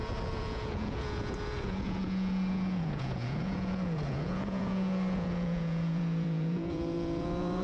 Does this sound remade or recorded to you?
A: remade